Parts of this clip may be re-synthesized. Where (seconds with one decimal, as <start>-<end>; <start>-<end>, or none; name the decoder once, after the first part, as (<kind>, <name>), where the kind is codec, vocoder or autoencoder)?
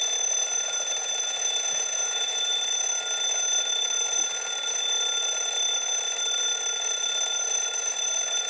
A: 1.0-2.5 (vocoder, Vocos)